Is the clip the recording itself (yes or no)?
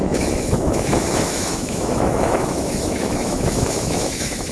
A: no